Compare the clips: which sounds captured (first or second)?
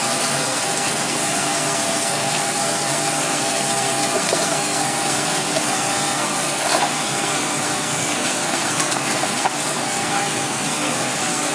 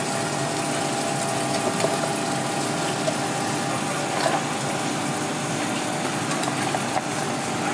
second